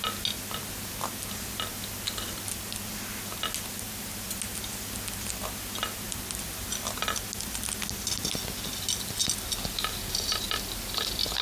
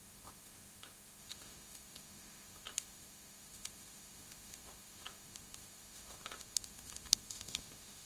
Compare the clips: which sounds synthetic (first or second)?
second